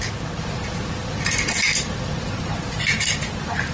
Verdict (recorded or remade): recorded